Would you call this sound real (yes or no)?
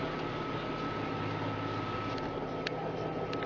yes